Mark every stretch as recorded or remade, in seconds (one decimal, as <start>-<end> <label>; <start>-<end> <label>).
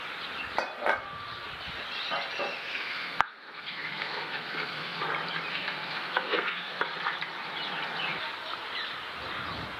0.0-2.6 recorded; 2.6-5.0 remade; 5.0-5.5 recorded; 5.5-6.8 remade; 6.8-9.8 recorded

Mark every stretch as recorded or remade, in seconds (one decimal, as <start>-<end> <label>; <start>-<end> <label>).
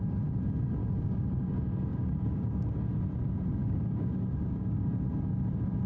0.0-0.8 recorded; 0.8-1.5 remade; 1.5-1.9 recorded; 1.9-2.7 remade; 2.7-3.6 recorded; 3.6-4.9 remade; 4.9-5.9 recorded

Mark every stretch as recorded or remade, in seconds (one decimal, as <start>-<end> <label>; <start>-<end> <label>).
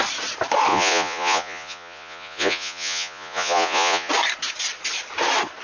0.0-0.7 recorded; 0.7-4.1 remade; 4.1-5.6 recorded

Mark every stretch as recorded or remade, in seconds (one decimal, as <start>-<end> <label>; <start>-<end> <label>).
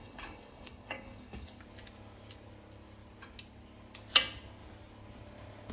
0.0-1.6 remade; 1.6-5.7 recorded